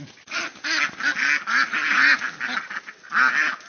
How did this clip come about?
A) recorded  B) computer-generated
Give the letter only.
A